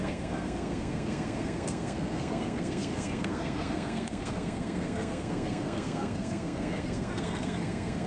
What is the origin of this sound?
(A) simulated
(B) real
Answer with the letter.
A